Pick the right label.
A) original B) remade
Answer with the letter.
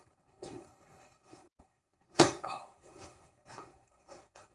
B